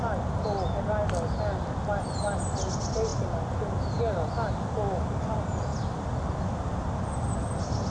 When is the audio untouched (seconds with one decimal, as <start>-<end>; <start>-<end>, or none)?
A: 0.0-7.9